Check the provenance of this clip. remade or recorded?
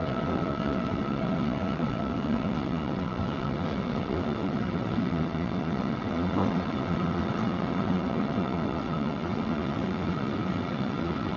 remade